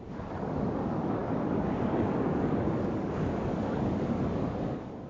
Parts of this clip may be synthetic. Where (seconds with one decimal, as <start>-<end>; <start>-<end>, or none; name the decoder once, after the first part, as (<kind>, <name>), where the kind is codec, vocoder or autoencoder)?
0.0-5.1 (codec, DAC)